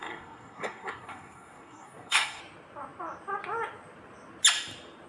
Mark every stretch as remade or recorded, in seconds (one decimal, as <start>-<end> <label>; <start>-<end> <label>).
0.0-2.4 remade; 2.4-5.1 recorded